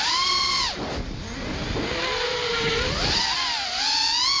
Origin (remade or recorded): recorded